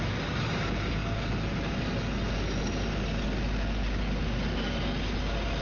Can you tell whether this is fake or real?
real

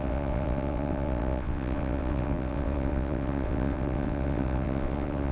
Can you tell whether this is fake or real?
fake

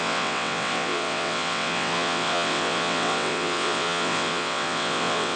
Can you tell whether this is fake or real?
fake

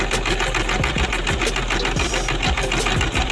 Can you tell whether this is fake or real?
real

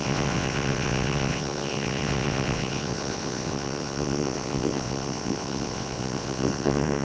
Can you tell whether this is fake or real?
fake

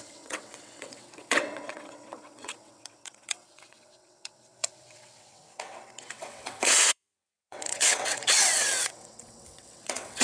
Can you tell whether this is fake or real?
fake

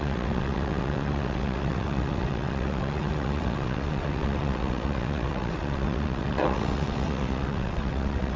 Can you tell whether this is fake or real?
fake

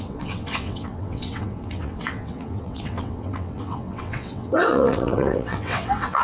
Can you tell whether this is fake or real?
fake